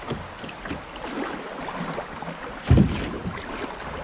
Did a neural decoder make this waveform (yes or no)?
no